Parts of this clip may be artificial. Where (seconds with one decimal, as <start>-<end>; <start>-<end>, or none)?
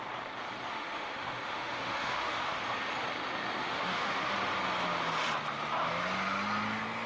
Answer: 0.7-2.6; 3.6-4.3